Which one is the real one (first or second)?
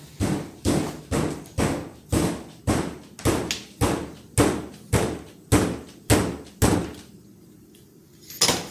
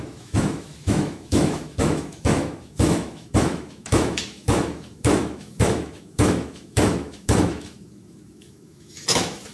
first